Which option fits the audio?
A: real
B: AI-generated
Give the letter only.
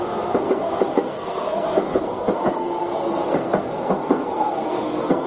B